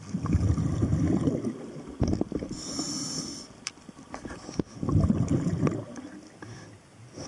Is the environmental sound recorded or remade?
recorded